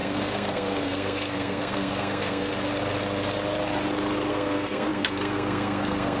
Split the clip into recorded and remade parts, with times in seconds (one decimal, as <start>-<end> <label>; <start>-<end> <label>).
0.0-2.5 remade; 2.5-4.3 recorded; 4.3-6.2 remade